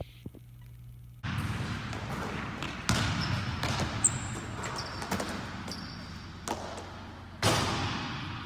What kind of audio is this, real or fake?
real